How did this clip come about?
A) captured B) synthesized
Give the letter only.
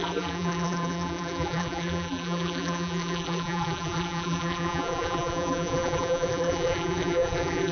B